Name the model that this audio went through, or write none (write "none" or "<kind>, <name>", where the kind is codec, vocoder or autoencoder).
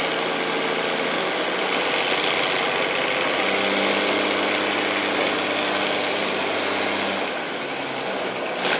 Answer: none